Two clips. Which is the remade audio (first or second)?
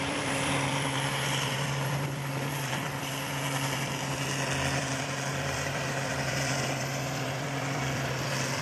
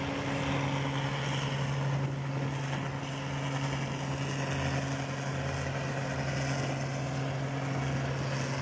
first